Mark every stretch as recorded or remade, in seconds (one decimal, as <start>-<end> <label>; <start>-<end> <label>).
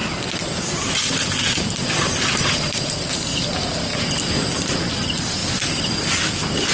0.0-6.7 recorded